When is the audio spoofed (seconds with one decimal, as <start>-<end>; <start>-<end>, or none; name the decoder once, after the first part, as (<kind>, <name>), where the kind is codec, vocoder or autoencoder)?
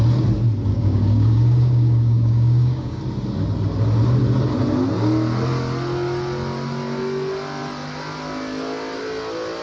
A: 0.7-3.0 (codec, DAC)